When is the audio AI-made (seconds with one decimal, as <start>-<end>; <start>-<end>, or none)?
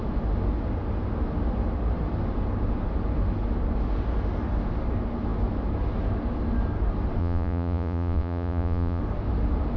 7.2-9.0